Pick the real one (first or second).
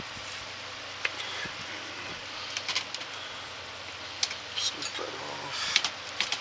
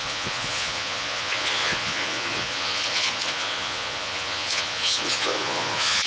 first